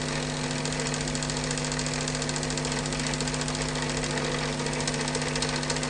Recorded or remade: recorded